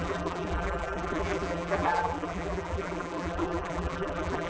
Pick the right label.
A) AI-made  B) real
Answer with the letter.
A